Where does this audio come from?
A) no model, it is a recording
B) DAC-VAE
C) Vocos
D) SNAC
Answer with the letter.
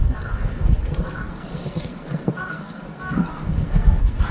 D